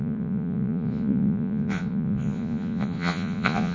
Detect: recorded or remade remade